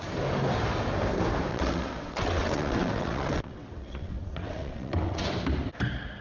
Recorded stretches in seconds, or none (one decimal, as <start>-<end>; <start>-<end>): 0.0-1.5; 5.2-6.2